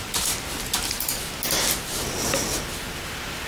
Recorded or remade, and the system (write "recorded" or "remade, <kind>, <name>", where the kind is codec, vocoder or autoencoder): recorded